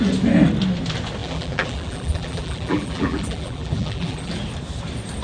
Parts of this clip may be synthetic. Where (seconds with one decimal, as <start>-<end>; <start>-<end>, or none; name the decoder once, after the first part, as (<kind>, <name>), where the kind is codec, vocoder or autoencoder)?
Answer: 1.2-4.3 (vocoder, BigVGAN v2)